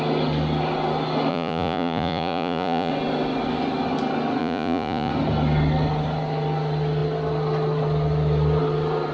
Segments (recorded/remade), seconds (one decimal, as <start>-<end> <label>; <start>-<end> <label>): 0.0-1.3 recorded; 1.3-2.9 remade; 2.9-4.4 recorded; 4.4-5.1 remade; 5.1-9.1 recorded